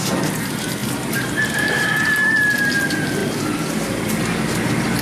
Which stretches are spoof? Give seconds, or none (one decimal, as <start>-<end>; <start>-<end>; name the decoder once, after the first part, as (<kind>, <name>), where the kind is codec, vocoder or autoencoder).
0.8-1.4 (vocoder, BigVGAN v2); 3.2-4.2